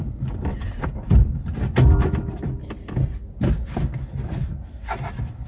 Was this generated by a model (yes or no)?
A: no